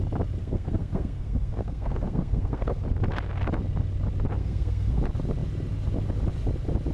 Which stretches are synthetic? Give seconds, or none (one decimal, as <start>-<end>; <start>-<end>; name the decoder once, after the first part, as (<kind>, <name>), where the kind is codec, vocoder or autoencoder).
0.4-2.8 (codec, SNAC); 4.4-5.0